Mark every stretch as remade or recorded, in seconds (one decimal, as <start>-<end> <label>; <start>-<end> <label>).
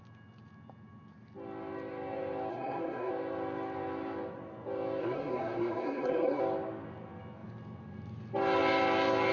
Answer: 0.0-2.5 recorded; 2.5-3.1 remade; 3.1-5.0 recorded; 5.0-6.4 remade; 6.4-9.3 recorded